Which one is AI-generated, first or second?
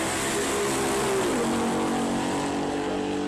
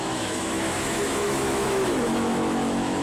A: second